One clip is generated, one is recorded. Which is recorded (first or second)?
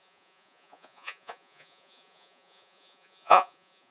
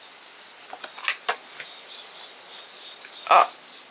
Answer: second